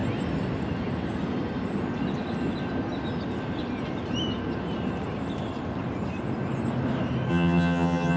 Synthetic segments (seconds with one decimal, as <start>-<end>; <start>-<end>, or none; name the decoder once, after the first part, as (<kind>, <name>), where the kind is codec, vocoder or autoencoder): 7.3-8.2 (vocoder, HiFi-GAN)